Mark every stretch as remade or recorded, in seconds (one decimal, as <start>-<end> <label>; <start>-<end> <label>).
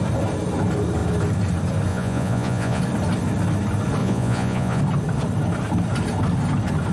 0.0-1.9 recorded; 1.9-2.8 remade; 2.8-4.0 recorded; 4.0-4.8 remade; 4.8-6.9 recorded